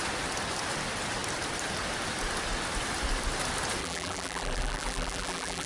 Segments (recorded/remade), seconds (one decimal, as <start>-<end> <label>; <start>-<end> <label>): 0.0-3.8 recorded; 3.8-5.7 remade